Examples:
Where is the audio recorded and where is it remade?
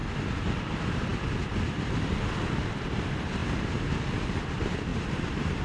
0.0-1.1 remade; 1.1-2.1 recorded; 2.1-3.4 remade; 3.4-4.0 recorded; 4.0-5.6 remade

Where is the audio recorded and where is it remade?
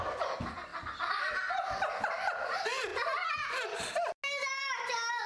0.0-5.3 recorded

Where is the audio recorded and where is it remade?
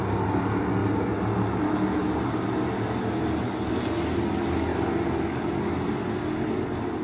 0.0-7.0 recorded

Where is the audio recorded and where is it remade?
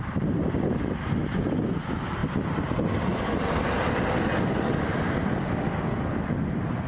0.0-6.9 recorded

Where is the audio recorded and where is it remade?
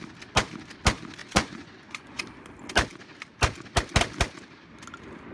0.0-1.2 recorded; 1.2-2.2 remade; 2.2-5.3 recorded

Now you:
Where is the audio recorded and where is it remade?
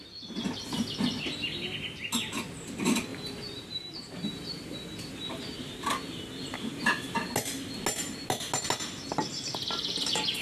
0.0-3.1 recorded; 3.1-6.2 remade; 6.2-10.4 recorded